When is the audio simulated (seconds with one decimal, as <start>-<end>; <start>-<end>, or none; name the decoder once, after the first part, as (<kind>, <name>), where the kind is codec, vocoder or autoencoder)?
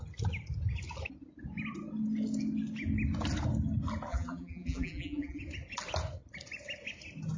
4.1-5.4 (vocoder, BigVGAN v2)